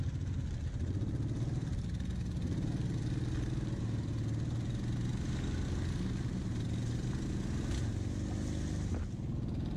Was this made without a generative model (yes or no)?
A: yes